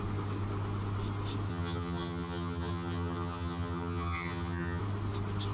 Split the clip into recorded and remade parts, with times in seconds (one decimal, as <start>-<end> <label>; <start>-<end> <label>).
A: 0.0-1.5 recorded; 1.5-4.8 remade; 4.8-5.5 recorded